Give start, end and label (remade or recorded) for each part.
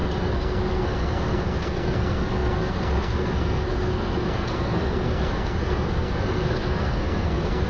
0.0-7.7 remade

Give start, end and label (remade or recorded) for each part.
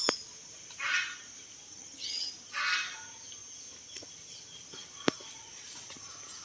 0.0-1.7 recorded; 1.7-2.3 remade; 2.3-6.4 recorded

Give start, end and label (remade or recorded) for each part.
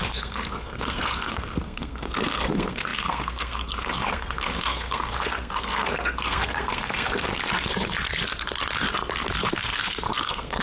0.0-7.3 remade; 7.3-9.4 recorded; 9.4-10.6 remade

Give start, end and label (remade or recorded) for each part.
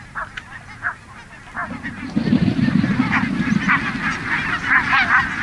0.0-5.4 recorded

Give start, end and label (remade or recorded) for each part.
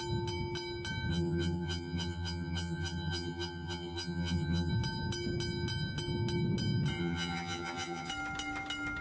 0.0-1.1 recorded; 1.1-4.7 remade; 4.7-7.0 recorded; 7.0-8.1 remade; 8.1-9.0 recorded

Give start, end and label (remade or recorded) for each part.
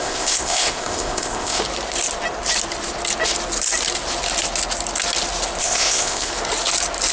0.0-1.6 remade; 1.6-5.6 recorded; 5.6-6.3 remade; 6.3-7.1 recorded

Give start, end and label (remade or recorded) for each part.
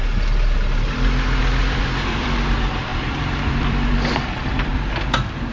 0.0-1.4 recorded; 1.4-4.7 remade; 4.7-5.5 recorded